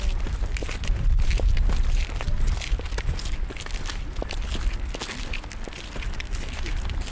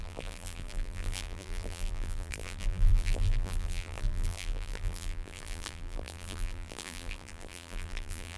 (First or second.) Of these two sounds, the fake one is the second